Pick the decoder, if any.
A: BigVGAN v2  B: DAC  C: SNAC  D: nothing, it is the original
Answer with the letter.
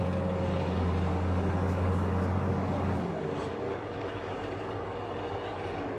B